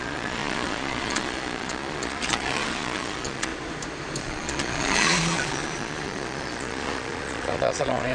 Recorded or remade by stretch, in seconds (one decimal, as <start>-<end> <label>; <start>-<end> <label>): 0.0-3.5 remade; 3.5-4.2 recorded; 4.2-8.1 remade